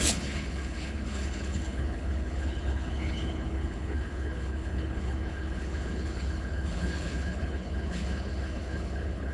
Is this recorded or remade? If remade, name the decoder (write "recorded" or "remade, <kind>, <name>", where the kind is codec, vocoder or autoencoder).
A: remade, codec, HILCodec